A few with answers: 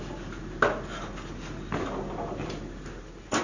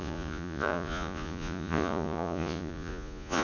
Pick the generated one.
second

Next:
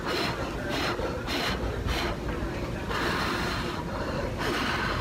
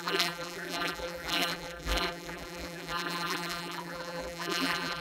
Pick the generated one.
second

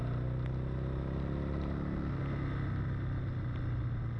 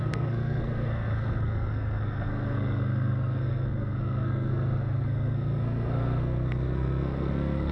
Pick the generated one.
second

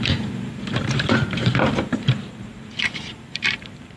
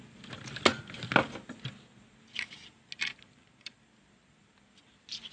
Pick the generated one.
first